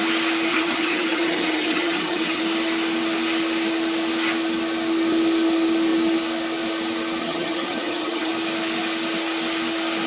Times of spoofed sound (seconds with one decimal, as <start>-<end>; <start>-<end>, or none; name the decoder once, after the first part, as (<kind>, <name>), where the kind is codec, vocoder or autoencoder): 0.5-2.4 (vocoder, HiFi-GAN); 7.2-8.3